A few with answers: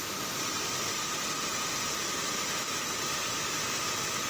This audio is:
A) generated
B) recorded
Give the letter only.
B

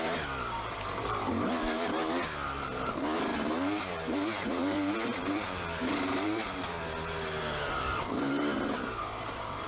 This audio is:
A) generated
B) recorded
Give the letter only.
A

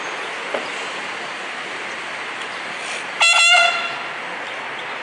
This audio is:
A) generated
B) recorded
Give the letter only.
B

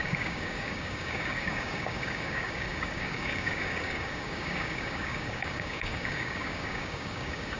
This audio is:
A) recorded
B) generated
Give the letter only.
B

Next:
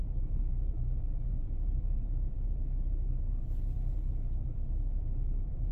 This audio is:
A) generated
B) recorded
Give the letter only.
A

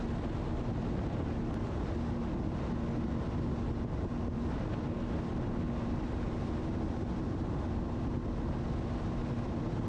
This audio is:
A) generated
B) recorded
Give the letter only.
B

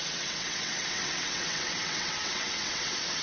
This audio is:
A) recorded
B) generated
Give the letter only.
B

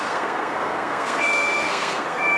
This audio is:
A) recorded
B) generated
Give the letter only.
B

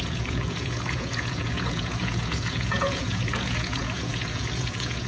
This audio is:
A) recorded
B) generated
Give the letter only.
B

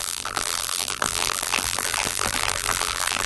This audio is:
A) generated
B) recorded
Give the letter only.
A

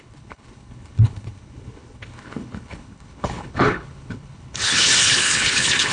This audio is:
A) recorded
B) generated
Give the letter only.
B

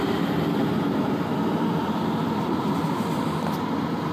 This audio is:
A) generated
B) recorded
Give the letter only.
B